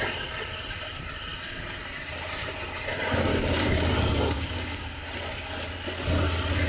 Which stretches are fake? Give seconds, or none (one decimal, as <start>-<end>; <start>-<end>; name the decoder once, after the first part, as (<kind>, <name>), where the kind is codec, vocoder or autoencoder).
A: 3.3-5.0 (codec, DAC)

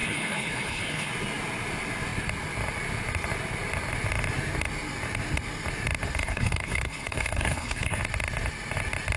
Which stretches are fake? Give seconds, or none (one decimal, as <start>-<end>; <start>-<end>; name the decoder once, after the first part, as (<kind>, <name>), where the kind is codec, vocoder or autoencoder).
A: 0.0-1.1 (codec, HILCodec); 6.2-8.0

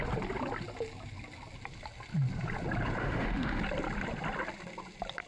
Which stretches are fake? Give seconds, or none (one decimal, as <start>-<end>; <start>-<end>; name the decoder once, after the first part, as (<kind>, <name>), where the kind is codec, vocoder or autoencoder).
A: 3.0-3.6 (autoencoder, DAC-VAE)

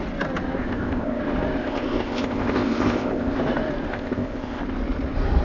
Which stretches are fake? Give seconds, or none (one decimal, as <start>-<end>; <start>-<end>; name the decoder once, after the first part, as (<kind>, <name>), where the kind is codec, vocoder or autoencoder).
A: 0.6-1.2 (codec, ZipCodec); 1.6-3.4; 3.9-4.6